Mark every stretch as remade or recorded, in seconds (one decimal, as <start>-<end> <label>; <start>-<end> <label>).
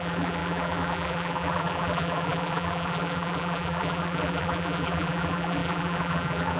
0.0-6.6 remade